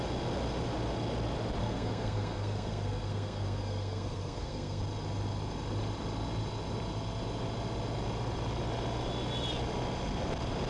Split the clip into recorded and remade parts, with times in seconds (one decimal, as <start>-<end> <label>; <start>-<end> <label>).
0.0-1.6 recorded; 1.6-4.8 remade; 4.8-10.7 recorded